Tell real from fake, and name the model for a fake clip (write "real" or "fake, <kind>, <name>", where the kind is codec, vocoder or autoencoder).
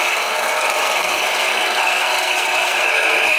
fake, codec, SNAC